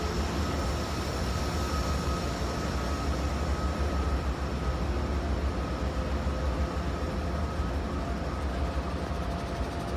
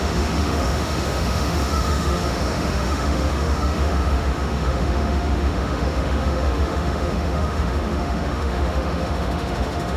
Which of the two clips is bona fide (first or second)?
first